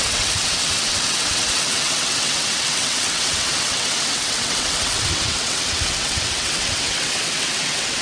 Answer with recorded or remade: remade